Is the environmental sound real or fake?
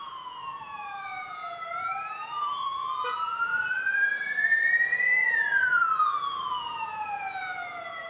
fake